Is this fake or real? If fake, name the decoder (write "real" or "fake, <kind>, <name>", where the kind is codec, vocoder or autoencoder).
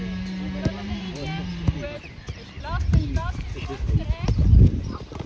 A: real